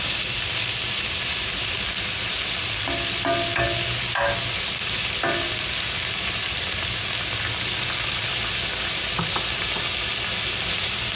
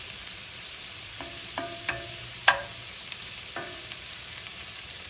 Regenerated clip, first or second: second